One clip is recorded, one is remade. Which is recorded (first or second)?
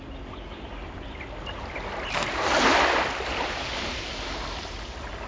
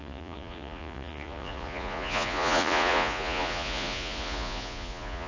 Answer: first